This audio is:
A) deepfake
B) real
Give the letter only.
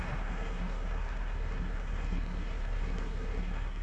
A